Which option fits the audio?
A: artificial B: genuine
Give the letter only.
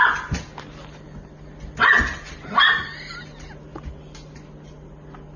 B